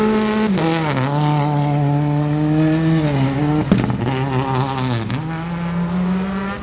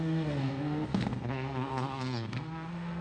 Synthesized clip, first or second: second